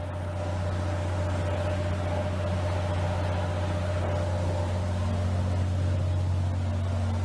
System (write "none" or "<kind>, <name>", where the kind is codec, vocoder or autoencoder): none